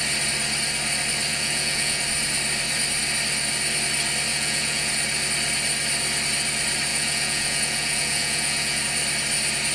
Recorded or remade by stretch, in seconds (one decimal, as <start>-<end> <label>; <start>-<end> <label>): 0.0-1.3 recorded; 1.3-2.0 remade; 2.0-4.3 recorded; 4.3-4.9 remade; 4.9-6.9 recorded; 6.9-8.8 remade; 8.8-9.7 recorded